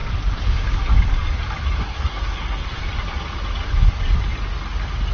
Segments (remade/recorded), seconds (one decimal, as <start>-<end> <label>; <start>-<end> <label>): 0.0-1.8 recorded; 1.8-2.8 remade; 2.8-5.1 recorded